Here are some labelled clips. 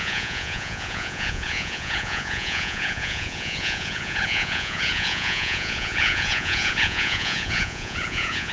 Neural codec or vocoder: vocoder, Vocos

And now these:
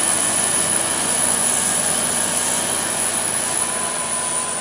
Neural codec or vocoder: vocoder, Vocos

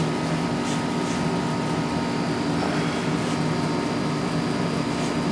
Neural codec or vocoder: none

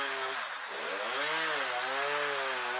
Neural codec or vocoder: none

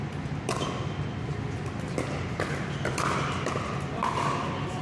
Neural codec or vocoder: none